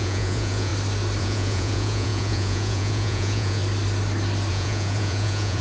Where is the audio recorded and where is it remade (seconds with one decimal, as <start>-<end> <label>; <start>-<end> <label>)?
0.0-0.7 remade; 0.7-1.2 recorded; 1.2-3.6 remade; 3.6-4.5 recorded; 4.5-5.6 remade